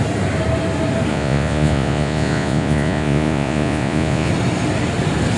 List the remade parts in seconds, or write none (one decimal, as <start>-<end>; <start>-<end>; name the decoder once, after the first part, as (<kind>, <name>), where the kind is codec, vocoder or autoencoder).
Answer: 1.1-4.3 (vocoder, Vocos)